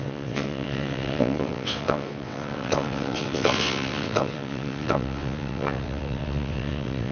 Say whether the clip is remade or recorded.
remade